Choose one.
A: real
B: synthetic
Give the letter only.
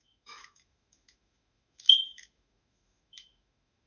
B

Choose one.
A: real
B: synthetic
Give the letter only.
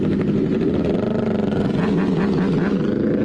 A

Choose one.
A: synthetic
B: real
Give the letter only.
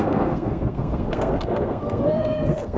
A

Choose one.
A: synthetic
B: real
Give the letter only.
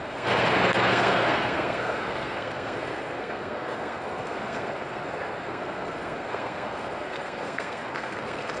A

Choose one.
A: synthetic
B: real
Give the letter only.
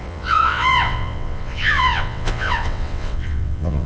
A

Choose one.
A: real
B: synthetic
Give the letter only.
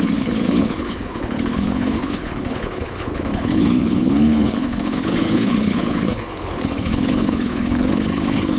B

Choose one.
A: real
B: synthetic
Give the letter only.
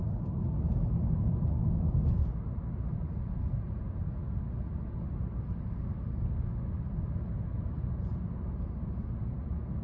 A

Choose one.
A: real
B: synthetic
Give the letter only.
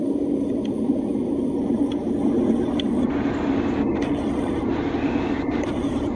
A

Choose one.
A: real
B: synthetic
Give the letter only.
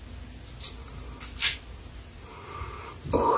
A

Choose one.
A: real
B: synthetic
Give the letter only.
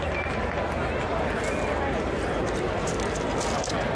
A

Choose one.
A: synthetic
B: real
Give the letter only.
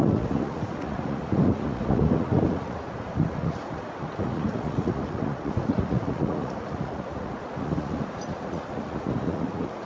A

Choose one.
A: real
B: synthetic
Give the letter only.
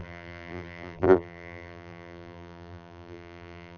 B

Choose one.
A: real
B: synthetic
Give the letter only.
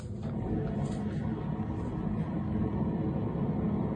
A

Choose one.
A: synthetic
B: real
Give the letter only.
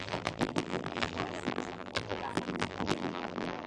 A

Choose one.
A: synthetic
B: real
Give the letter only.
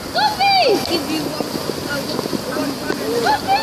B